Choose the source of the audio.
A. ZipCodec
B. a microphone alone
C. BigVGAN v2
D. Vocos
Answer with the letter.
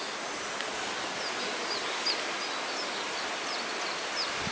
B